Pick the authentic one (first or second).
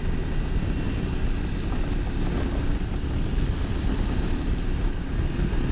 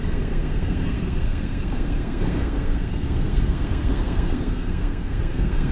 first